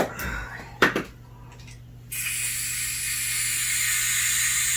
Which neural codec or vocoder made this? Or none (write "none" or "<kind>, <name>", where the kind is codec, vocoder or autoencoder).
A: none